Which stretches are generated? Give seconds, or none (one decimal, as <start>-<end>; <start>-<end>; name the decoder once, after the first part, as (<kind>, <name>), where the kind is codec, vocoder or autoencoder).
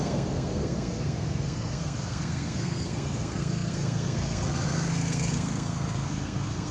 0.0-6.7 (codec, SNAC)